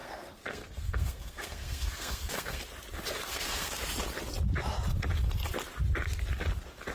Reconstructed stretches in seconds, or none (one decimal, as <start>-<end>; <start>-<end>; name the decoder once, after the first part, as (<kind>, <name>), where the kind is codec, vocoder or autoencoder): 0.0-2.6 (codec, SNAC); 3.3-3.8